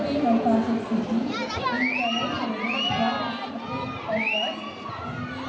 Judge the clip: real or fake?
real